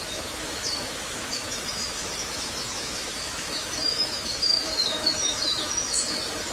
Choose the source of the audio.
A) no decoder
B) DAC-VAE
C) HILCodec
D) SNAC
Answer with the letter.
B